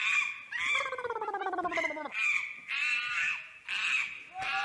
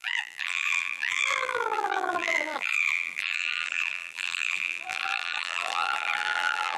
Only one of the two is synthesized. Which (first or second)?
second